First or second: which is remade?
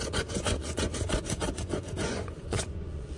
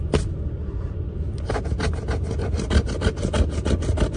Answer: first